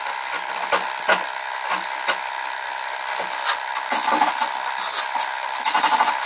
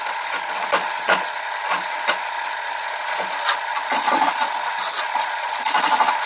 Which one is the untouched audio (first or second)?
first